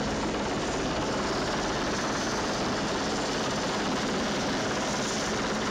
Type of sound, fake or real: real